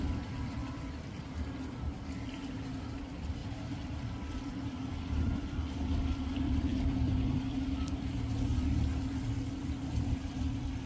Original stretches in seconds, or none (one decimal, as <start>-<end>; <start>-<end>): none